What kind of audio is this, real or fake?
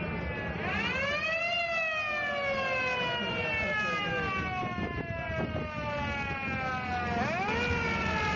real